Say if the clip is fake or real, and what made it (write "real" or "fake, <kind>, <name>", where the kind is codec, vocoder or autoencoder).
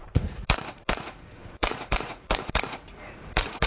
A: fake, vocoder, Vocos